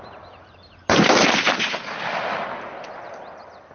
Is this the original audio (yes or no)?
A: yes